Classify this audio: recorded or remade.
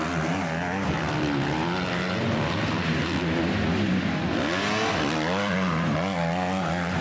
recorded